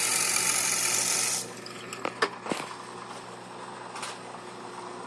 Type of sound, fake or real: real